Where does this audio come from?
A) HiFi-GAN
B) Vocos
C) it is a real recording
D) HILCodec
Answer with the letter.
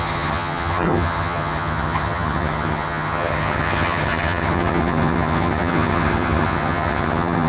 A